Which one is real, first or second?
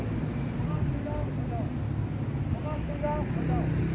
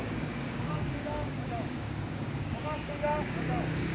first